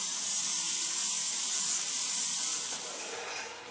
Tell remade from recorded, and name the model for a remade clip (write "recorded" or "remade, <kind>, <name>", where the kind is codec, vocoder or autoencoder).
recorded